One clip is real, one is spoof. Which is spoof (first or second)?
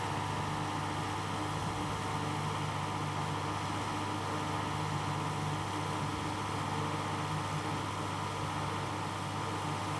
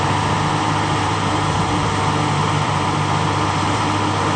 second